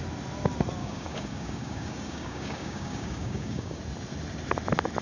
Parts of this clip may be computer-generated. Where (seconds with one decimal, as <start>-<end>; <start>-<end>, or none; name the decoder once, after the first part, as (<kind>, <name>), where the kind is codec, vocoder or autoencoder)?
0.8-3.8 (codec, DAC)